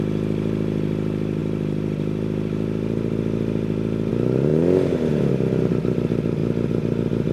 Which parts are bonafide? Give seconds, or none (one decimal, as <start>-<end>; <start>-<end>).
0.0-7.3